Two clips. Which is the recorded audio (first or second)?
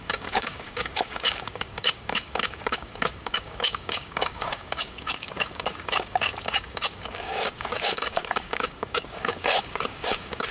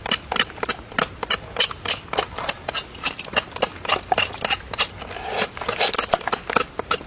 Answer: second